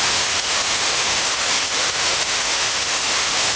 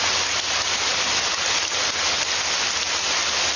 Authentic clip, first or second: second